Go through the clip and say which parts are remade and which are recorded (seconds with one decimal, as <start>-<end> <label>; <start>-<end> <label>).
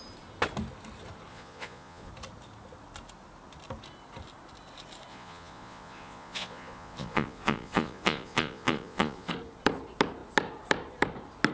0.0-1.3 recorded; 1.3-2.1 remade; 2.1-5.1 recorded; 5.1-9.3 remade; 9.3-11.5 recorded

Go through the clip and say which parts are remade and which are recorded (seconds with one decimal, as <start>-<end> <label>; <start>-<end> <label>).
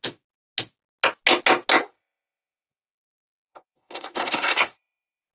0.0-1.8 recorded; 1.8-5.3 remade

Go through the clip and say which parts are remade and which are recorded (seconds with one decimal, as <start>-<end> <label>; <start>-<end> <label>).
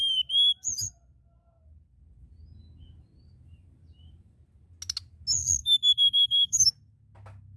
0.0-5.6 recorded; 5.6-6.7 remade; 6.7-7.6 recorded